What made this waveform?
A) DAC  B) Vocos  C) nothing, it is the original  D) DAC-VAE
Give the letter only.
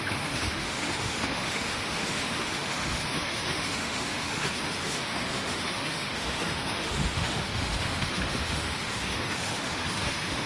D